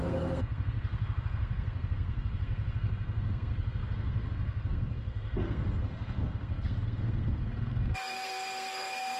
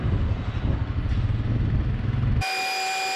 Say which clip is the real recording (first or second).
second